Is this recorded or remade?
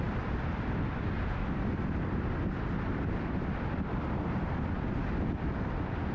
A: remade